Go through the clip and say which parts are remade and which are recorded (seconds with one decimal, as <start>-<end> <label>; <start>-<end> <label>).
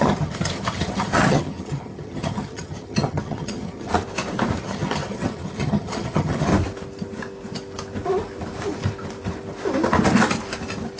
0.0-3.9 remade; 3.9-4.6 recorded; 4.6-6.5 remade; 6.5-11.0 recorded